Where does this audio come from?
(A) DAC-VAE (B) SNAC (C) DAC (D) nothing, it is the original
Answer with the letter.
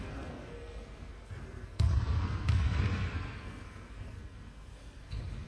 B